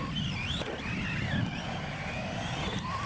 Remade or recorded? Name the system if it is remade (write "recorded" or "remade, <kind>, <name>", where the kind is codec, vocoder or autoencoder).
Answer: recorded